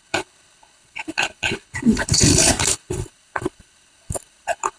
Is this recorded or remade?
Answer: remade